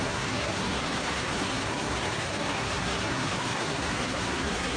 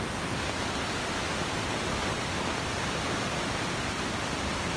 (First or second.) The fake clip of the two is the first